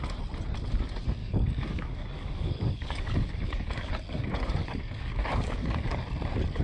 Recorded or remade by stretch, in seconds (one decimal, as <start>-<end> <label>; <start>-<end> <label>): 0.0-1.2 recorded; 1.2-3.9 remade; 3.9-4.6 recorded; 4.6-6.0 remade; 6.0-6.6 recorded